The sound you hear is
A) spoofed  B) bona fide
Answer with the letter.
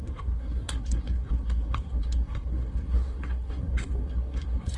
A